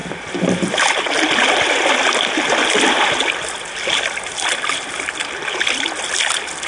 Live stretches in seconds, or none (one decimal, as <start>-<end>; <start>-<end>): 0.0-6.7